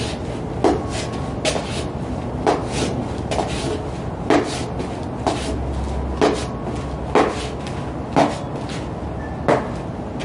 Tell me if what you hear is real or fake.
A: real